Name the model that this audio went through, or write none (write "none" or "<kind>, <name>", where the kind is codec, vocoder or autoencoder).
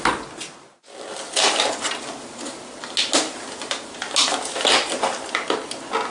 none